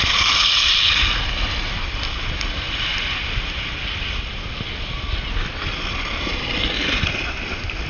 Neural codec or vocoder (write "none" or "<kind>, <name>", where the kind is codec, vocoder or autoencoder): none